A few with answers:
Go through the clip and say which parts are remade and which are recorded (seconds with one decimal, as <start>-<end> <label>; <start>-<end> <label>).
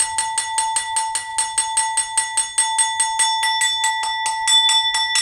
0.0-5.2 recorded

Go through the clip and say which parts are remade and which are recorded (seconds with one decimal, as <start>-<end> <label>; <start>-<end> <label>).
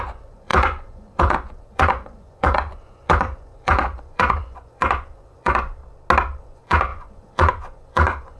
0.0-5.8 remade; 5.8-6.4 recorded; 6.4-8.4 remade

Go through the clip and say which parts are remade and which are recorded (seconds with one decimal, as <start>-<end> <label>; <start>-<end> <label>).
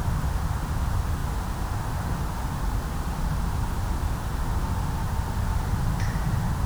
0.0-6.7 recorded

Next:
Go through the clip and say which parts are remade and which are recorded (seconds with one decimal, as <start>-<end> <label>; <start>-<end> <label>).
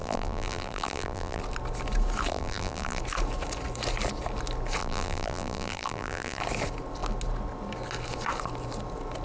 0.0-1.4 remade; 1.4-2.3 recorded; 2.3-3.0 remade; 3.0-4.8 recorded; 4.8-6.4 remade; 6.4-9.2 recorded